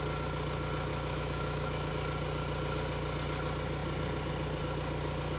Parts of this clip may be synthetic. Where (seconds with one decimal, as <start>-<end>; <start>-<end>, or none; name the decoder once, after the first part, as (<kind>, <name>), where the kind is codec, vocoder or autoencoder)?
0.9-1.9 (autoencoder, DAC-VAE)